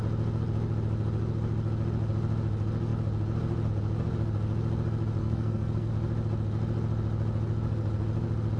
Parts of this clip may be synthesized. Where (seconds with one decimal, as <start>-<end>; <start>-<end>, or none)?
5.2-5.9